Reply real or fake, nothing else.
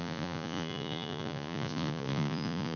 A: fake